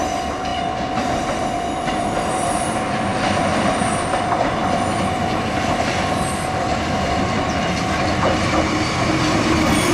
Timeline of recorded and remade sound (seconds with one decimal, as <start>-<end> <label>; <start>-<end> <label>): 0.0-9.9 recorded